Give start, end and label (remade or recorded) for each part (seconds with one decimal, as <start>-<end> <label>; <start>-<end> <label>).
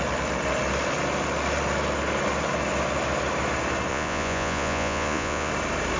0.0-3.9 recorded; 3.9-5.5 remade; 5.5-6.0 recorded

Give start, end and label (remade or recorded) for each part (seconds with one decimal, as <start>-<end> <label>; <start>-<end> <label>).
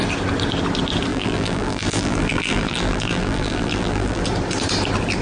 0.0-1.1 recorded; 1.1-4.2 remade; 4.2-5.2 recorded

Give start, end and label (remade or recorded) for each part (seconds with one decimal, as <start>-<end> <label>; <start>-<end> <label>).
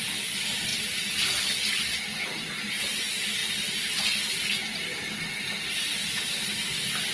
0.0-7.1 recorded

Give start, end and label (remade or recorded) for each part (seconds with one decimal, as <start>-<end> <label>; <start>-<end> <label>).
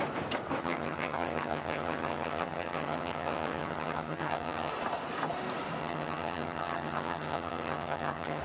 0.0-0.6 recorded; 0.6-4.7 remade; 4.7-5.8 recorded; 5.8-8.4 remade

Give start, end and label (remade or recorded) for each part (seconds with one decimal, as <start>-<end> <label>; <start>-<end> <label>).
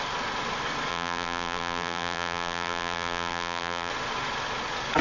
0.0-0.9 recorded; 0.9-3.9 remade; 3.9-5.0 recorded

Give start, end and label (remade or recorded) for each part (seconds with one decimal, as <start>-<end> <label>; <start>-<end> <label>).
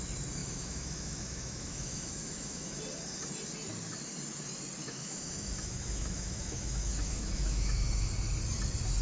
0.0-0.4 recorded; 0.4-2.8 remade; 2.8-4.8 recorded; 4.8-8.1 remade; 8.1-9.0 recorded